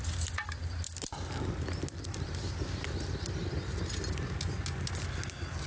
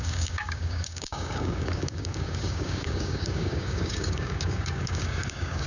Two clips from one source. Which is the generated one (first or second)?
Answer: second